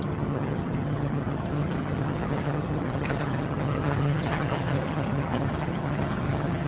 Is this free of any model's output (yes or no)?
no